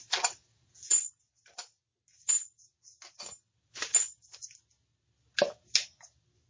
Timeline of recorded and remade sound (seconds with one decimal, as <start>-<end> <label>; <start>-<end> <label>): 0.0-0.5 recorded; 0.5-1.1 remade; 1.1-6.5 recorded